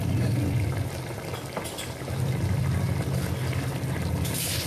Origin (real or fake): real